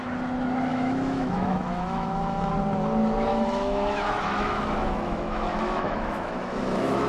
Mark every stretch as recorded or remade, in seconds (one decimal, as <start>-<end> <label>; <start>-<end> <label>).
0.0-0.7 recorded; 0.7-2.5 remade; 2.5-3.3 recorded; 3.3-7.1 remade